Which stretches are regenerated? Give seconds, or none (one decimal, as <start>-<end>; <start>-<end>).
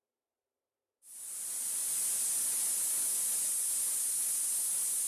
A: 0.0-1.8